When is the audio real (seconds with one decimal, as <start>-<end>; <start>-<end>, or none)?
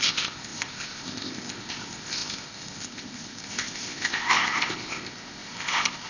none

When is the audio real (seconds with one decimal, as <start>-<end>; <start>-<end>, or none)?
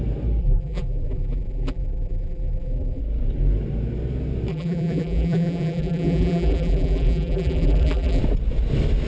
0.0-0.4; 3.0-4.5; 8.2-9.1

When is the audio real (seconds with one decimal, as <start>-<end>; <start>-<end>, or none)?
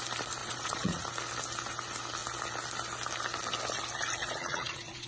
0.0-0.4; 1.0-4.2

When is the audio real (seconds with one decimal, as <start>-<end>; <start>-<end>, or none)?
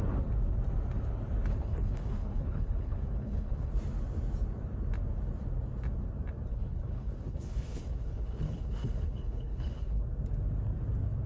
0.0-1.5; 3.7-6.5; 10.0-11.3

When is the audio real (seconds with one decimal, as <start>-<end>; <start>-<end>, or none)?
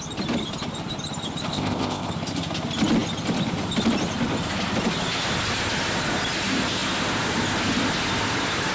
0.0-1.5; 2.1-8.7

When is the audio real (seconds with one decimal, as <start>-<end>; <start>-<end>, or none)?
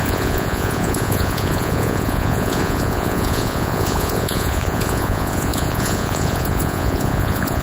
none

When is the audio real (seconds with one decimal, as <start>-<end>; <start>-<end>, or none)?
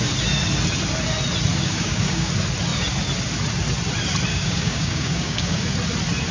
0.0-1.5; 2.3-4.3; 5.7-6.3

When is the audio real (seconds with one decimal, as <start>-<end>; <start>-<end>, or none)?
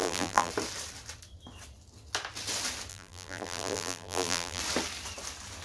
0.5-2.9; 4.6-5.6